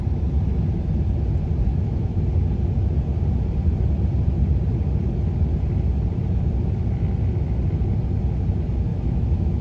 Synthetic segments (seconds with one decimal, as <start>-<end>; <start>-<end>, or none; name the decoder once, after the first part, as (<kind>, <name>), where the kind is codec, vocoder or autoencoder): 1.7-2.2 (autoencoder, DAC-VAE); 8.9-9.6